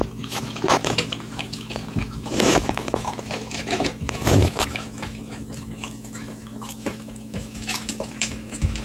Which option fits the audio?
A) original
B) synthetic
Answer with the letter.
B